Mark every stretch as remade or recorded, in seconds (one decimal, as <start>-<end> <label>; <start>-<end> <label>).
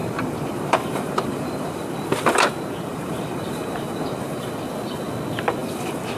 0.0-1.8 remade; 1.8-2.9 recorded; 2.9-4.5 remade; 4.5-5.6 recorded; 5.6-6.2 remade